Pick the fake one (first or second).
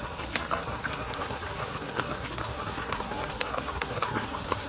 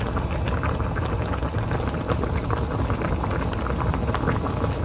first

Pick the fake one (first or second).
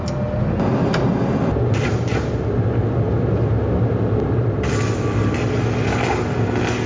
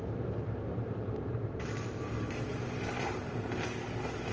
second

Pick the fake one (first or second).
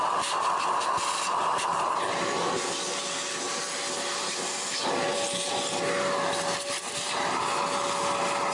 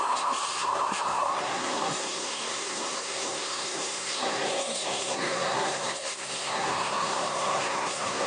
second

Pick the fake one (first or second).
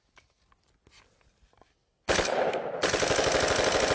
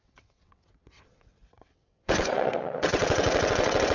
second